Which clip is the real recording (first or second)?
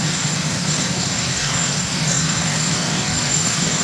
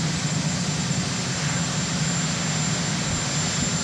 second